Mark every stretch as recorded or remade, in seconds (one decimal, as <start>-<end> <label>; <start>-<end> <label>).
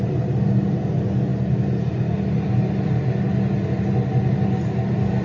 0.0-5.2 recorded